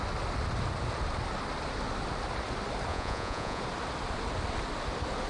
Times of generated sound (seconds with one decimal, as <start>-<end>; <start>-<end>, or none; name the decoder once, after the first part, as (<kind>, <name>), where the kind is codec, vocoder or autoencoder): 2.9-3.6 (vocoder, Vocos)